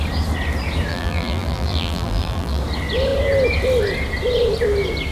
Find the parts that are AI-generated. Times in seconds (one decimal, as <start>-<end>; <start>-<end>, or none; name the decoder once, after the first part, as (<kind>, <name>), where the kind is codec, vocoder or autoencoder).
0.9-2.6 (vocoder, BigVGAN v2)